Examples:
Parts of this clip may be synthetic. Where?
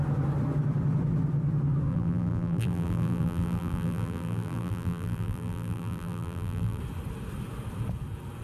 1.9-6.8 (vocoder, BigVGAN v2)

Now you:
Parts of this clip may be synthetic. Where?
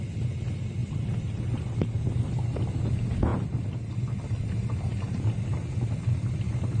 none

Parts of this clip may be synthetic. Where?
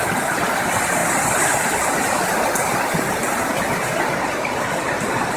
0.0-5.4 (vocoder, BigVGAN v2)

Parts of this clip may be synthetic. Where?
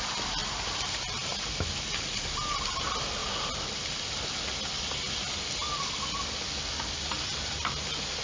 0.4-1.3 (vocoder, BigVGAN v2)